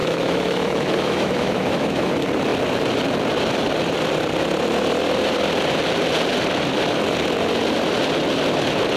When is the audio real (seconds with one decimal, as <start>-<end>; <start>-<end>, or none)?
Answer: 2.1-9.0